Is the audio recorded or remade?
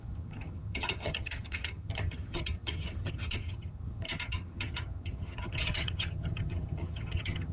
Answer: remade